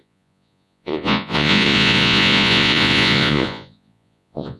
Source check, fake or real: fake